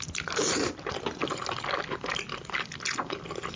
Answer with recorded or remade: recorded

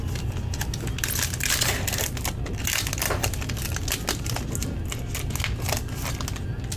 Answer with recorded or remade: recorded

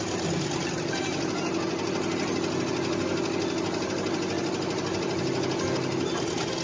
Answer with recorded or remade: recorded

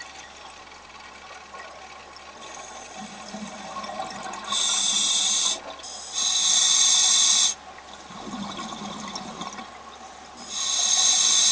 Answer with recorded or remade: recorded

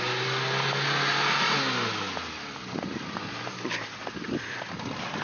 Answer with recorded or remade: recorded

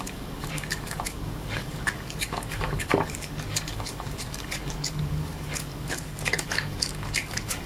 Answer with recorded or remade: remade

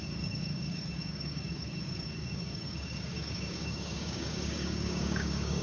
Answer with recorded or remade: remade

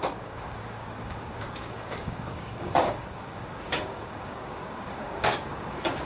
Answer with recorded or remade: remade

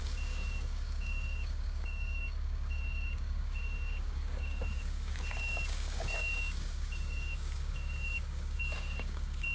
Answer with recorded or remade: remade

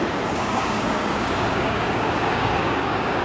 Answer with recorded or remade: remade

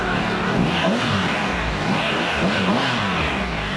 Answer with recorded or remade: remade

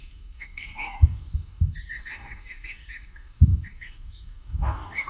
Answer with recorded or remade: remade